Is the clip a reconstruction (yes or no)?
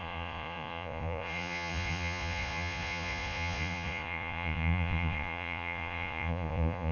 yes